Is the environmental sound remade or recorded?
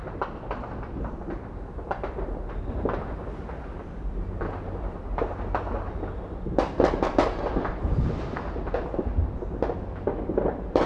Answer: recorded